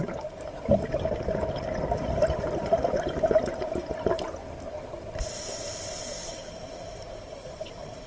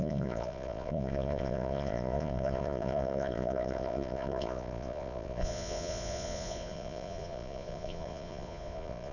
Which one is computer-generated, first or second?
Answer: second